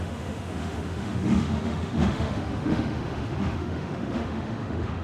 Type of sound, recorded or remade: remade